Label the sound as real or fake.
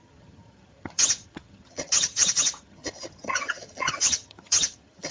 fake